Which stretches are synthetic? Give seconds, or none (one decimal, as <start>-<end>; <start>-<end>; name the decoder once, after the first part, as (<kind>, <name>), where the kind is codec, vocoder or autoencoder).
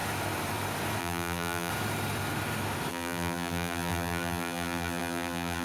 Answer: 1.0-1.7 (vocoder, BigVGAN v2); 2.9-5.6